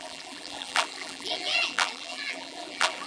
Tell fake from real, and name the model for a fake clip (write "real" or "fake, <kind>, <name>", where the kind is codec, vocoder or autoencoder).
fake, vocoder, BigVGAN v2